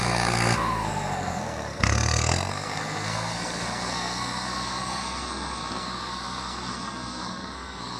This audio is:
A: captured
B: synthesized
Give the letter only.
B